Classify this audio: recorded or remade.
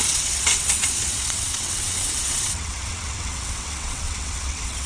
remade